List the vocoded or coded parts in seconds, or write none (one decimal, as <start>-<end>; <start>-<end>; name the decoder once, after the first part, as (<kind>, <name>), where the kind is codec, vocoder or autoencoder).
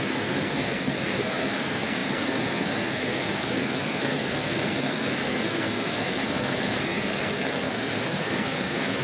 0.0-9.0 (codec, SNAC)